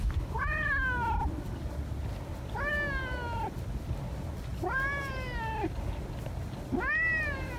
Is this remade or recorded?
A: recorded